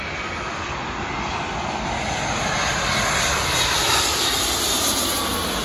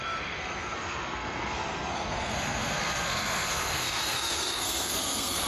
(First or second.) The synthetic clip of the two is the second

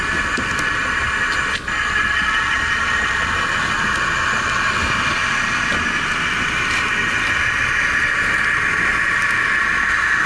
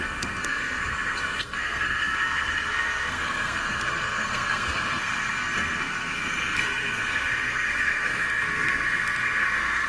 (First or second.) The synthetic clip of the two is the second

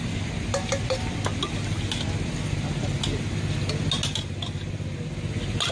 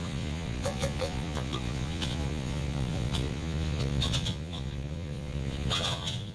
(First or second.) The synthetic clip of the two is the second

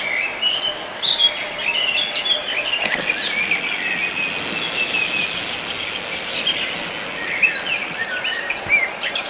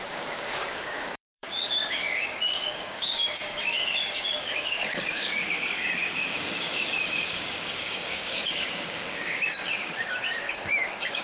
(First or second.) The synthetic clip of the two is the second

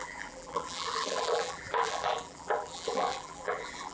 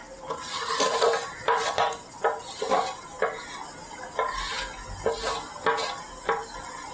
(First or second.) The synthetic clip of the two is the first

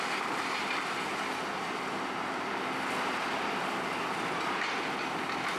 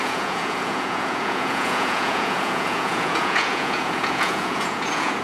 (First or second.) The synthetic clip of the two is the second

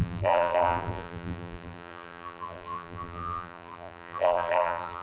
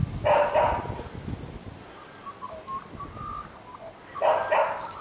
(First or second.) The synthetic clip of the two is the first